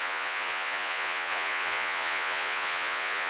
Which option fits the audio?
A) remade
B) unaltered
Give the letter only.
A